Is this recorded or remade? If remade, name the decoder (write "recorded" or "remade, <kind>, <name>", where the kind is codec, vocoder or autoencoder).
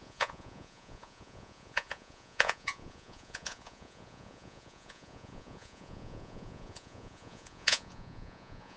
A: remade, vocoder, Vocos